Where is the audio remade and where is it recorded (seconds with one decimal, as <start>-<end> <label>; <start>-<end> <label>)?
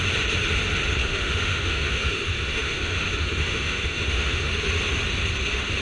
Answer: 0.0-1.0 recorded; 1.0-4.5 remade; 4.5-5.8 recorded